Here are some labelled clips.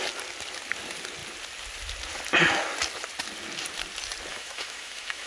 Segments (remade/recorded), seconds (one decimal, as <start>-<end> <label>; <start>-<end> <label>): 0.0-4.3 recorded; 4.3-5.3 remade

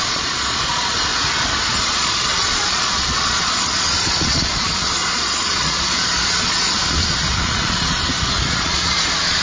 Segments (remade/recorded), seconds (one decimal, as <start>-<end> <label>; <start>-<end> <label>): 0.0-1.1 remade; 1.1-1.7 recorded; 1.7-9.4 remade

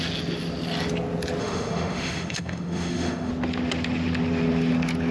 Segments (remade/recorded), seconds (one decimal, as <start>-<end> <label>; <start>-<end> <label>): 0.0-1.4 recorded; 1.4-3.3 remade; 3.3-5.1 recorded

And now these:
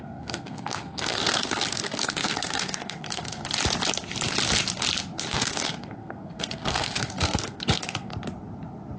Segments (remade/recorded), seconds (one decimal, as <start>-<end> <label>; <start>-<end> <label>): 0.0-3.4 remade; 3.4-5.2 recorded; 5.2-8.1 remade; 8.1-9.0 recorded

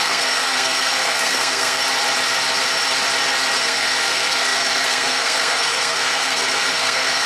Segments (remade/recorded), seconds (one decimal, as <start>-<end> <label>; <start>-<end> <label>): 0.0-1.8 remade; 1.8-3.6 recorded; 3.6-7.3 remade

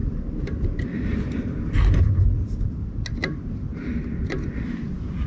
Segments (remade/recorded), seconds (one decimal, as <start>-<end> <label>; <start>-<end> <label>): 0.0-5.3 recorded